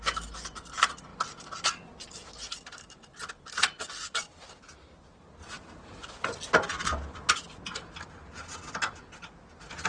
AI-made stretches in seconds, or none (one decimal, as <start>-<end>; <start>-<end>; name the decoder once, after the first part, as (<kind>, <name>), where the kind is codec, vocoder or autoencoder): none